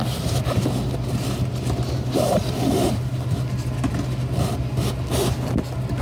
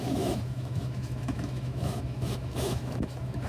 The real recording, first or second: first